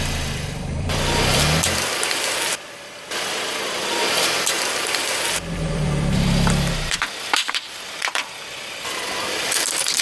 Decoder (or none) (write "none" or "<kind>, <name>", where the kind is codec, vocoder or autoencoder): vocoder, BigVGAN v2